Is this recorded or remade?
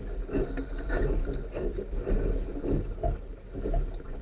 recorded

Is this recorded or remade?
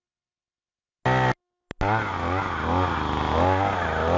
recorded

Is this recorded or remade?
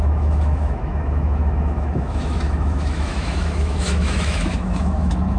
remade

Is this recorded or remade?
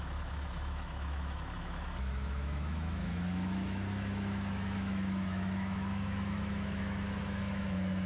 remade